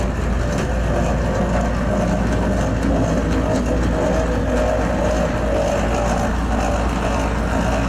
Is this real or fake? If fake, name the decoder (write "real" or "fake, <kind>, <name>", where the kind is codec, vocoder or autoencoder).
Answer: real